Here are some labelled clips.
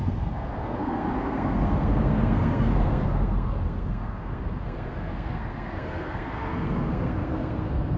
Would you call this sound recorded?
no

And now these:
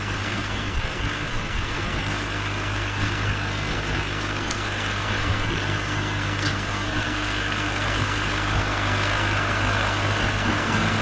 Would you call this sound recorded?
no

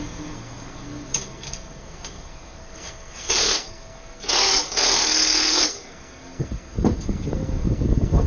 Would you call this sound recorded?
no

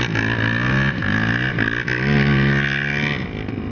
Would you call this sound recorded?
yes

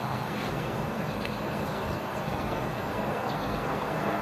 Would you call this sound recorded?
no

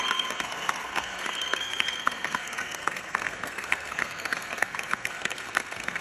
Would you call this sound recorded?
no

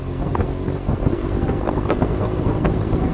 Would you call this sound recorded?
no